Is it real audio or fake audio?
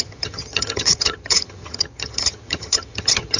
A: fake